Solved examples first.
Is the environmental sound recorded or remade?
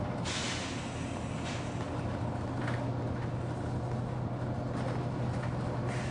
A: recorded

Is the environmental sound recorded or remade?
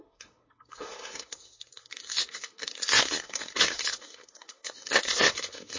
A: remade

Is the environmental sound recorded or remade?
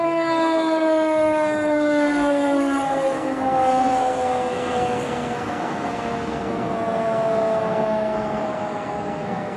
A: remade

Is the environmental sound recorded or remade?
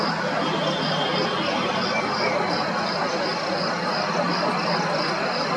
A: recorded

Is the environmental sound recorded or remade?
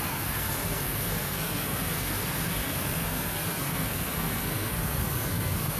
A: remade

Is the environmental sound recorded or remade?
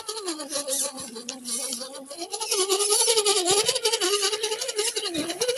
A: recorded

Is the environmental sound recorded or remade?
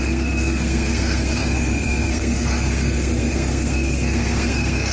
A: remade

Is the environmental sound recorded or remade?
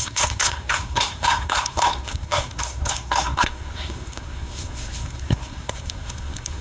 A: remade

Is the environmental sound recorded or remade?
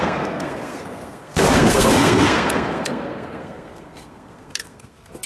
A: remade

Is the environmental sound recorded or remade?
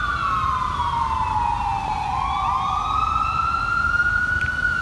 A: recorded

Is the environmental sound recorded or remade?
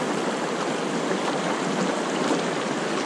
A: recorded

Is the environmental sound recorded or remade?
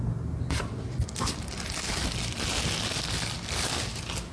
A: recorded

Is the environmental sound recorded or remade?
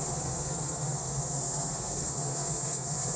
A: remade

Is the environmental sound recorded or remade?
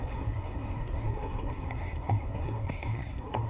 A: remade